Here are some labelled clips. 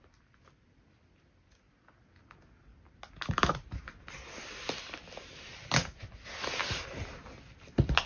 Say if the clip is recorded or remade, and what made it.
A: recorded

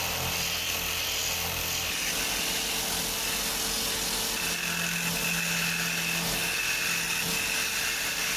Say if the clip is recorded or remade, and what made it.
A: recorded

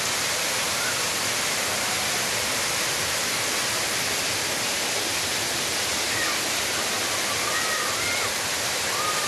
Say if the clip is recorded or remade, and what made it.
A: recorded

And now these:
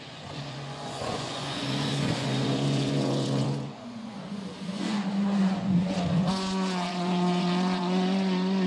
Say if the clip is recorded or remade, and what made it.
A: remade, vocoder, Vocos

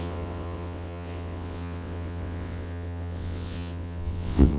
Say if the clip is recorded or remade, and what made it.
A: remade, vocoder, WaveNeXt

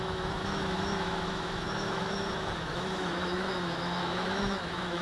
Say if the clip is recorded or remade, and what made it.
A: remade, autoencoder, DAC-VAE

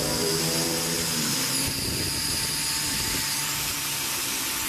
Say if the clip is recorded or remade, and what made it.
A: recorded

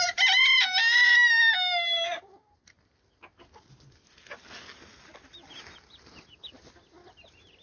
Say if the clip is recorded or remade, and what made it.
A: recorded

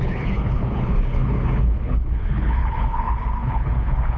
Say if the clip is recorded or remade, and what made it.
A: remade, codec, HILCodec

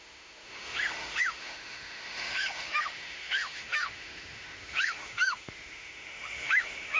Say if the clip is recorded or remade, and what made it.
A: remade, autoencoder, DAC-VAE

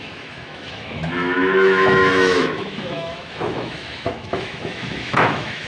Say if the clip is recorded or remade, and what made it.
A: remade, autoencoder, DAC-VAE